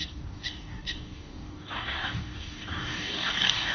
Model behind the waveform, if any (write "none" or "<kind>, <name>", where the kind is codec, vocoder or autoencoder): codec, DAC